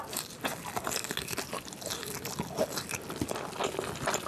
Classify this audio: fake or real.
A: real